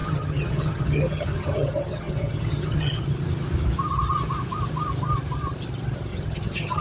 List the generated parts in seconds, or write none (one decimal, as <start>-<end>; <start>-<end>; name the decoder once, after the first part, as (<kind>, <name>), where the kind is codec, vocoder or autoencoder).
0.0-3.0 (vocoder, HiFi-GAN); 6.1-6.8